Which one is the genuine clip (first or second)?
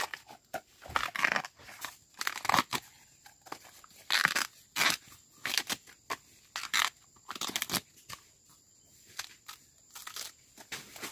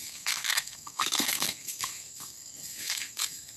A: first